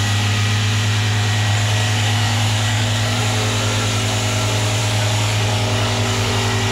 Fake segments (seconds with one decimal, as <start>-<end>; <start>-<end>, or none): 1.5-3.2; 4.8-6.3